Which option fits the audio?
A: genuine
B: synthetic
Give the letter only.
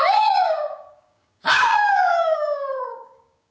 B